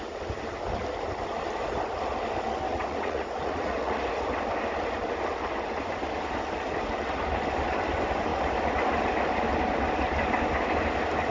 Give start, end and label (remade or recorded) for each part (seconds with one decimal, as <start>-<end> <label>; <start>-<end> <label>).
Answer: 0.0-2.7 recorded; 2.7-4.0 remade; 4.0-11.3 recorded